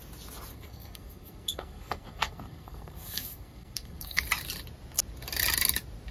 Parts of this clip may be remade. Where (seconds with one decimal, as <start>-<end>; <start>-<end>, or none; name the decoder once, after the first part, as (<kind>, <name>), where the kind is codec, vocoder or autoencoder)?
0.5-4.2 (codec, SNAC)